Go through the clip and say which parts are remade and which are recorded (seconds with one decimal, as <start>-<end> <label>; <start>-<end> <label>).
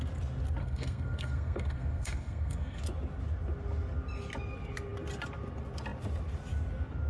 0.0-0.6 recorded; 0.6-2.8 remade; 2.8-7.1 recorded